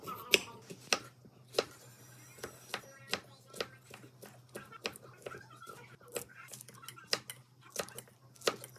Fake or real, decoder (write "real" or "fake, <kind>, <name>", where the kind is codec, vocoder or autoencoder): real